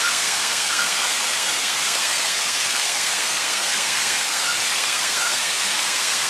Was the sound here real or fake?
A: fake